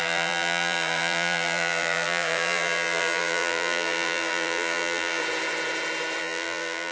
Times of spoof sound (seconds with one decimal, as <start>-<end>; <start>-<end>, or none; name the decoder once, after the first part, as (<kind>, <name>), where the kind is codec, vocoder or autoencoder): 0.0-5.2 (vocoder, BigVGAN v2); 6.2-6.9